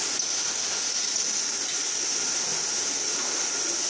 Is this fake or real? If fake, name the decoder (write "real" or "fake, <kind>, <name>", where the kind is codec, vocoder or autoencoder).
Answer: real